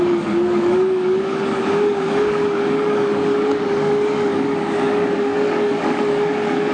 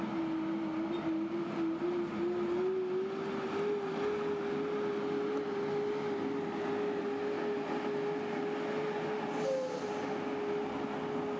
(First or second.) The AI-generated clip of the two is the first